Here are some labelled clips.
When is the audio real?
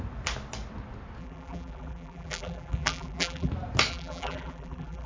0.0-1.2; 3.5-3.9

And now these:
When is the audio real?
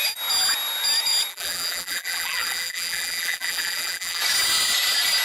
0.0-1.3; 4.2-5.2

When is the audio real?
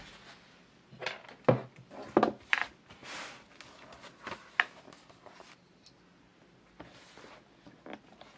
0.0-3.0; 3.5-8.4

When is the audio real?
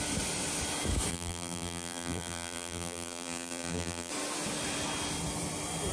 0.0-1.1; 4.1-5.9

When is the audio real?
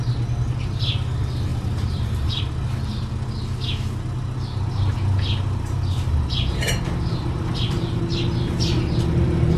0.0-1.5; 2.4-7.2; 8.0-9.6